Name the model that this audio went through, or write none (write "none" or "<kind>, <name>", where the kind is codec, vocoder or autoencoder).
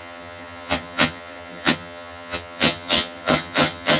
vocoder, HiFi-GAN